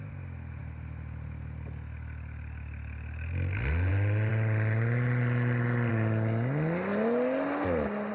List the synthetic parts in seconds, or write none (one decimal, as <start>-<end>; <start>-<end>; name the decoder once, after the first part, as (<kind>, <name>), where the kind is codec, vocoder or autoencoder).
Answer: none